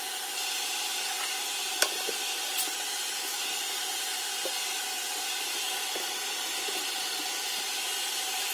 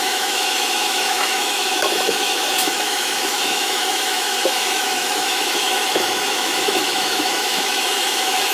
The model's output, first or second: second